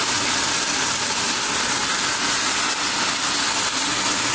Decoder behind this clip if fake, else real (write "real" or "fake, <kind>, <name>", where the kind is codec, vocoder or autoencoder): real